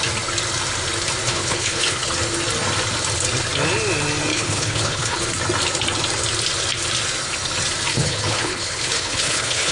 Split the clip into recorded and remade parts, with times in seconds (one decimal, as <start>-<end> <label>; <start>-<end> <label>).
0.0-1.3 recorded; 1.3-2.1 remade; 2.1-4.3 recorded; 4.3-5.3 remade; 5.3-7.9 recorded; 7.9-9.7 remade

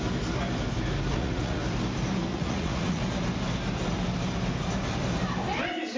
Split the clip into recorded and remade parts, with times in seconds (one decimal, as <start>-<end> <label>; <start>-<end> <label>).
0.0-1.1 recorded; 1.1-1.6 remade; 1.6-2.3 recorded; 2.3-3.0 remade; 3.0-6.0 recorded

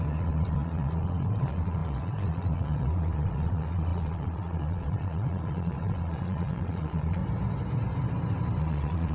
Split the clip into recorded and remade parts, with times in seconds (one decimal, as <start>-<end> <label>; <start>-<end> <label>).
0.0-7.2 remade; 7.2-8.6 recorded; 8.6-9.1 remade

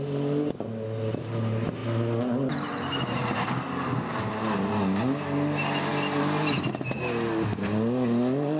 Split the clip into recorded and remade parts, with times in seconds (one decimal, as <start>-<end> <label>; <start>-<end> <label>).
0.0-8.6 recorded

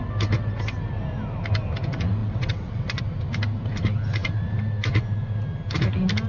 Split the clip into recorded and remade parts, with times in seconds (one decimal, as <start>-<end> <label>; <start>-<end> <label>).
0.0-2.2 recorded; 2.2-3.0 remade; 3.0-6.3 recorded

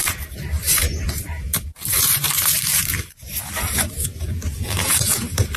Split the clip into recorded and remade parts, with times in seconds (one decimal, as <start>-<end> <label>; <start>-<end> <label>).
0.0-5.6 remade